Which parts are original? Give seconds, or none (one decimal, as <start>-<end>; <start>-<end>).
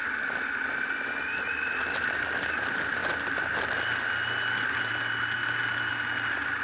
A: 0.0-6.6